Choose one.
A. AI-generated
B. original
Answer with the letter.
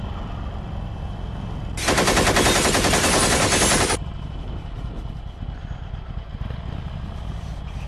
B